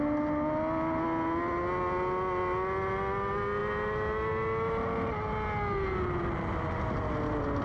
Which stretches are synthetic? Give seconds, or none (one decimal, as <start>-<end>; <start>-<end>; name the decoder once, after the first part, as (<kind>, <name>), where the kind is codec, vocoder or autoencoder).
none